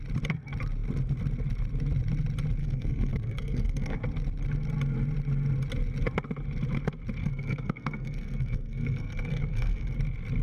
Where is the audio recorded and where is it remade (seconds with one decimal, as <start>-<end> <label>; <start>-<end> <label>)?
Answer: 0.0-2.6 recorded; 2.6-4.0 remade; 4.0-7.2 recorded; 7.2-10.0 remade; 10.0-10.4 recorded